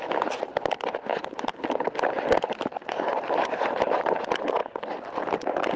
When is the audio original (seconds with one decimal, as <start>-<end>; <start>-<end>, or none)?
0.0-2.7; 3.6-4.6